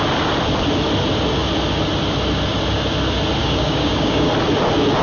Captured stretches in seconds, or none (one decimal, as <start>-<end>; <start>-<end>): 0.0-3.4; 4.3-5.0